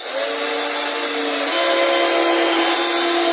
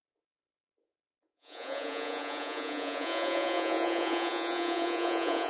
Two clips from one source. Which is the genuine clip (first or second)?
first